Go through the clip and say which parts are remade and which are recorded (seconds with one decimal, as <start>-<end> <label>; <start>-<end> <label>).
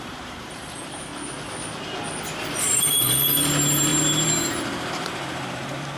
0.0-1.1 remade; 1.1-2.6 recorded; 2.6-6.0 remade